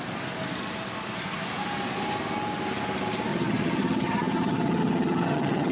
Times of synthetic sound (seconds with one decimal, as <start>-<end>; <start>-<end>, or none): 3.3-5.7